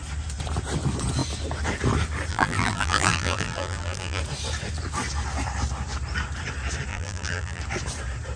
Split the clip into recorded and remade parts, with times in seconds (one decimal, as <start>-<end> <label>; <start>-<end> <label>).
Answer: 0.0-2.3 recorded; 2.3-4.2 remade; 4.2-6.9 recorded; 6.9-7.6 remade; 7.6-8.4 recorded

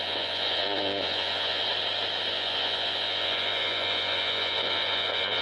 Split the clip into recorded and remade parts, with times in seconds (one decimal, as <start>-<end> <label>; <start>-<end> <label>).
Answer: 0.0-1.6 remade; 1.6-2.3 recorded; 2.3-5.4 remade

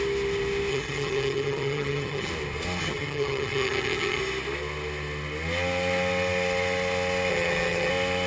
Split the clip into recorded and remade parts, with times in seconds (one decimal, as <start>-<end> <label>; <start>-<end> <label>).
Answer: 0.0-0.7 recorded; 0.7-2.3 remade; 2.3-2.8 recorded; 2.8-4.2 remade; 4.2-7.3 recorded; 7.3-7.9 remade; 7.9-8.3 recorded

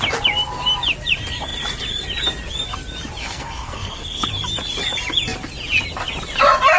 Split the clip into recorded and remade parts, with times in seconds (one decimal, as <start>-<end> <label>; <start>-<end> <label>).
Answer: 0.0-3.2 recorded; 3.2-4.3 remade; 4.3-6.8 recorded